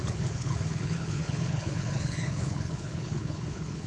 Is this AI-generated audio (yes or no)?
yes